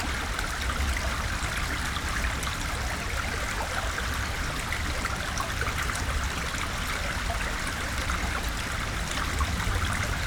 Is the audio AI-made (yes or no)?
no